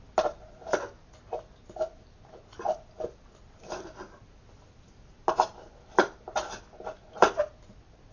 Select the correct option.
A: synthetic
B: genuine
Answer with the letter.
B